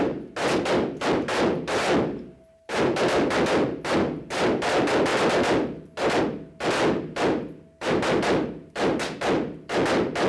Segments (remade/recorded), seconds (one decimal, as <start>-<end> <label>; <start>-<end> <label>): 0.0-10.3 recorded